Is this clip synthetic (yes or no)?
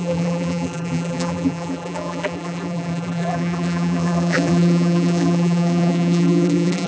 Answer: yes